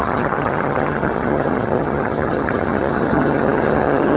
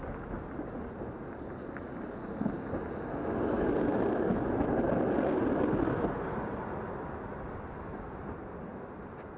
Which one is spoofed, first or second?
first